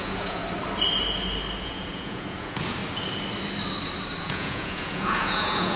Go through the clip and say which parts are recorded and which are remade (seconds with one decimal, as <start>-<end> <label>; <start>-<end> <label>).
0.0-0.4 remade; 0.4-1.6 recorded; 1.6-2.8 remade; 2.8-4.2 recorded; 4.2-5.8 remade